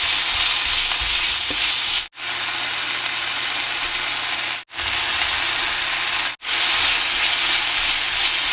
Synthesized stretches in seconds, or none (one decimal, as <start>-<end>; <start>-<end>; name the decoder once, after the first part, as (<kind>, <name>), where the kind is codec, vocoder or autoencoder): 1.0-1.9 (vocoder, Vocos)